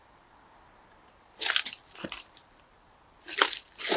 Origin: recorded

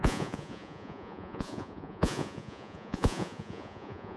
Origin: remade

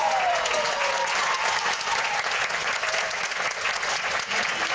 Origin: remade